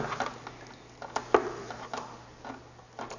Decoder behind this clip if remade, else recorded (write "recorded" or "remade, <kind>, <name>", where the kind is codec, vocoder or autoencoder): recorded